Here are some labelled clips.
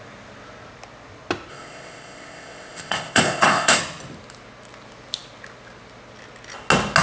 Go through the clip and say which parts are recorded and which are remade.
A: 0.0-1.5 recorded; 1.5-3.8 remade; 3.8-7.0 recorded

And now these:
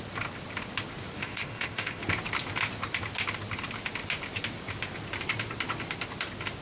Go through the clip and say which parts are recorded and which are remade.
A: 0.0-1.2 recorded; 1.2-2.0 remade; 2.0-6.6 recorded

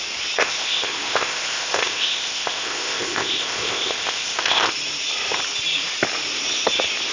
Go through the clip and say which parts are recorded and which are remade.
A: 0.0-0.4 recorded; 0.4-4.7 remade; 4.7-7.1 recorded

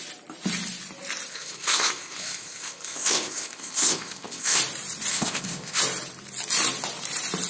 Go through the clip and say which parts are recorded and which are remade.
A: 0.0-1.3 recorded; 1.3-4.6 remade; 4.6-5.1 recorded; 5.1-5.8 remade; 5.8-7.5 recorded

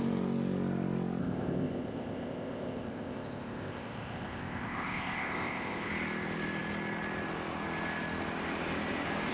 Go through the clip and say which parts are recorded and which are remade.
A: 0.0-1.2 recorded; 1.2-5.9 remade; 5.9-9.3 recorded

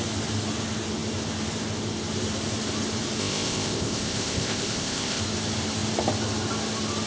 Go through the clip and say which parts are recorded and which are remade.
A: 0.0-3.2 recorded; 3.2-5.2 remade; 5.2-7.1 recorded